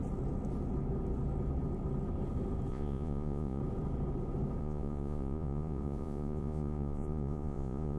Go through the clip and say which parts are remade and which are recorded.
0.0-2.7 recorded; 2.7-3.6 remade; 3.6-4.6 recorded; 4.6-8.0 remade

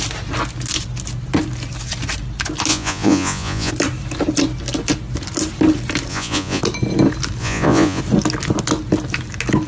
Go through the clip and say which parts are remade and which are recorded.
0.0-2.7 recorded; 2.7-3.7 remade; 3.7-6.1 recorded; 6.1-6.6 remade; 6.6-7.4 recorded; 7.4-8.0 remade; 8.0-9.7 recorded

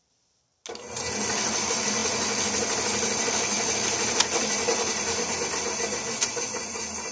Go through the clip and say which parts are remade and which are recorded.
0.0-7.1 recorded

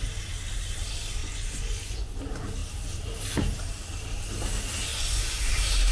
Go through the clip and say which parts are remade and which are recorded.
0.0-1.2 recorded; 1.2-2.2 remade; 2.2-4.9 recorded; 4.9-5.5 remade; 5.5-5.9 recorded

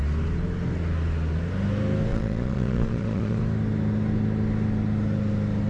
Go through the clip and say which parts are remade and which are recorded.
0.0-2.1 recorded; 2.1-3.4 remade; 3.4-5.7 recorded

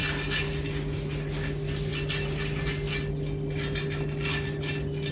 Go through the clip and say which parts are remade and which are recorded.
0.0-5.1 recorded